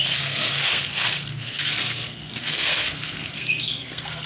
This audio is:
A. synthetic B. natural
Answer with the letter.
A